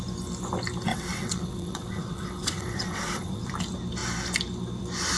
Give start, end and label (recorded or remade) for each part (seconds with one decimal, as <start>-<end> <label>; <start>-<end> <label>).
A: 0.0-0.9 recorded; 0.9-3.5 remade; 3.5-5.2 recorded

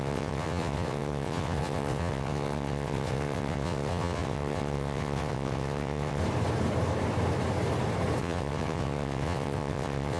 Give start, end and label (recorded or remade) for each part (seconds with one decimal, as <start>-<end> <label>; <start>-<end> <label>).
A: 0.0-6.2 remade; 6.2-8.2 recorded; 8.2-10.2 remade

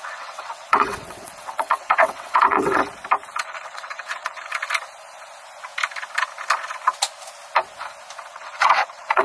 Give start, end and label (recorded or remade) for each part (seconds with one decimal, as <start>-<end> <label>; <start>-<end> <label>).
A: 0.0-2.8 remade; 2.8-3.4 recorded; 3.4-4.5 remade; 4.5-8.3 recorded; 8.3-9.2 remade

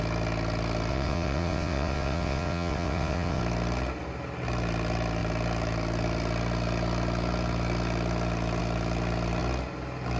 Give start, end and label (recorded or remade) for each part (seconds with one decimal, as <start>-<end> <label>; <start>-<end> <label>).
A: 0.0-0.9 recorded; 0.9-3.4 remade; 3.4-10.2 recorded

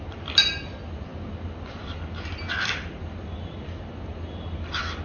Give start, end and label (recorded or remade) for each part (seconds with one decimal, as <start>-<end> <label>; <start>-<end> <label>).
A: 0.0-5.0 recorded